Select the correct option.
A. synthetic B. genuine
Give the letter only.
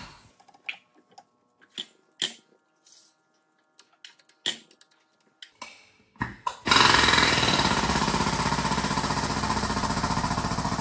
B